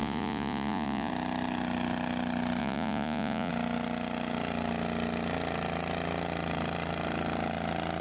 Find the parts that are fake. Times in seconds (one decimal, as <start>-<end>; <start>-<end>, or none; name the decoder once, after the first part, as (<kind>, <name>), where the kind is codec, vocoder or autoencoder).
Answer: 0.0-1.1 (vocoder, Vocos); 2.6-3.5